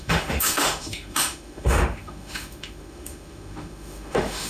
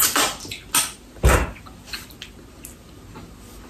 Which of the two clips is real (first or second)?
second